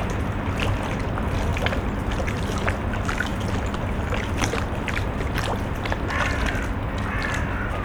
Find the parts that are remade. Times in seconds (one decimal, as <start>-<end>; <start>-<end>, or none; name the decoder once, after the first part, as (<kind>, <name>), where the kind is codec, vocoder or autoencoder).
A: 1.5-2.1 (vocoder, BigVGAN v2); 3.3-6.3